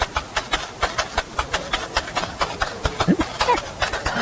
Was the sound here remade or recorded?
recorded